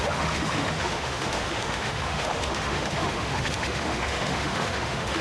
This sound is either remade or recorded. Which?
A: remade